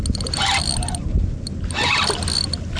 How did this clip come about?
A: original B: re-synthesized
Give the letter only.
A